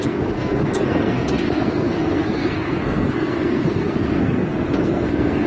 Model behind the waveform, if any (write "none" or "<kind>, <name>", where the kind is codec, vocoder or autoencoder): codec, SNAC